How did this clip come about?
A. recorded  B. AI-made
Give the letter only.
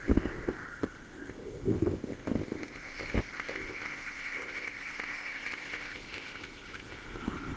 B